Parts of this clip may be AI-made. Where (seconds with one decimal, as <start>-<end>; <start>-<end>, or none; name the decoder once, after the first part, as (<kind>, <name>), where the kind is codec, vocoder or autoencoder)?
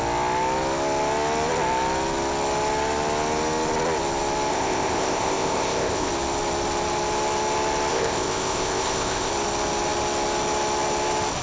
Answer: 4.5-6.1 (codec, ZipCodec); 7.9-9.3